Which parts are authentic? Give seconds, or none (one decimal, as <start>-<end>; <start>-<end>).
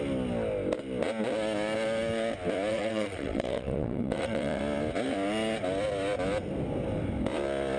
0.0-2.7; 4.6-7.8